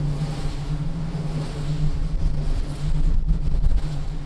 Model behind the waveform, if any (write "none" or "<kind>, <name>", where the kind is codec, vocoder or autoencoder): none